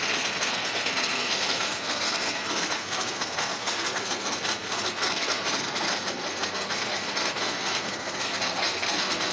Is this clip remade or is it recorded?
remade